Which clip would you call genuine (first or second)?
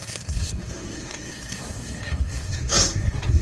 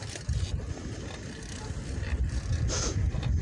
second